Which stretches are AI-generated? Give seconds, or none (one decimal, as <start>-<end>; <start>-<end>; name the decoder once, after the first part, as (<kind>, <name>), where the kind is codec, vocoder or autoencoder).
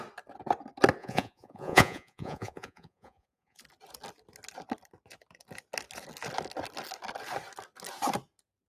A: 1.0-3.6 (vocoder, Vocos)